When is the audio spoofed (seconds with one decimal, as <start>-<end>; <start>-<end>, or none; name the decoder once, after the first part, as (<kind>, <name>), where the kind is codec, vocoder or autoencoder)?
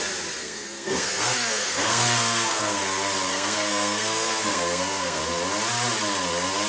0.4-2.8 (codec, SNAC); 3.3-5.2